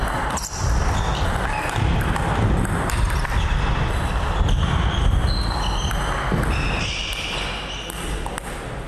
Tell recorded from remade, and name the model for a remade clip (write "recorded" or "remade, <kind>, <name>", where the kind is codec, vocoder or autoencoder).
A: recorded